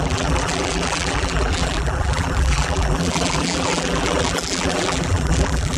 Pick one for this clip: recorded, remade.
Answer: remade